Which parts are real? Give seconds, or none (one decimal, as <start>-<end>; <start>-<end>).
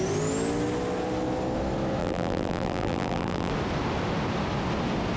0.0-2.0; 3.5-5.2